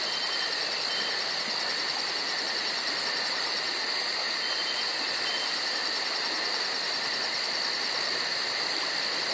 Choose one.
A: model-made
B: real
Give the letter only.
B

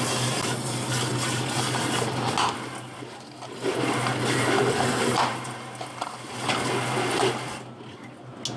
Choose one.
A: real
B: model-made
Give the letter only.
A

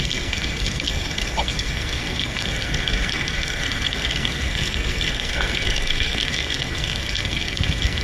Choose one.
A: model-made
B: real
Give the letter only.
A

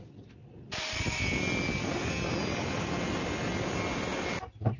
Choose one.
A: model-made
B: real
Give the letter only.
B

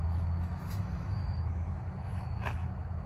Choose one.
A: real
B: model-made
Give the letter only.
B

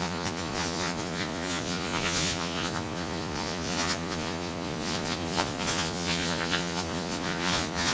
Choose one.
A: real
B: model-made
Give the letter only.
B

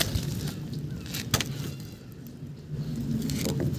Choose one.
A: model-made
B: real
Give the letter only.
B